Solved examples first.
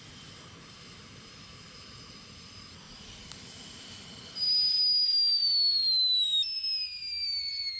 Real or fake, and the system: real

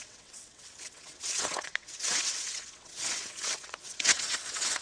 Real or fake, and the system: fake, vocoder, WaveNeXt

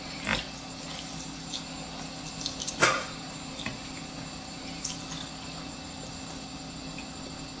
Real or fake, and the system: real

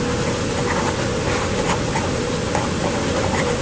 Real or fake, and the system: real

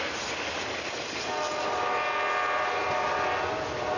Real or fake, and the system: real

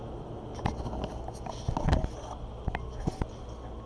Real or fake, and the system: real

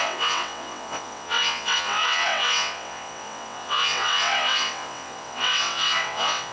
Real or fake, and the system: fake, vocoder, WaveNeXt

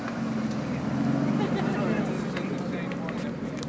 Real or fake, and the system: real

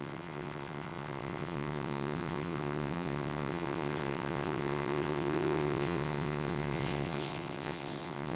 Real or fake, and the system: fake, vocoder, WaveNeXt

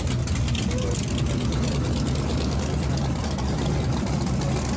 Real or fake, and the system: real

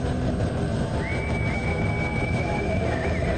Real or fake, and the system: real